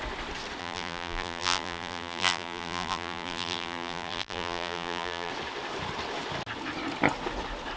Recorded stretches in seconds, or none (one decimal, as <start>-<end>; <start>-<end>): 0.0-0.6; 5.3-7.8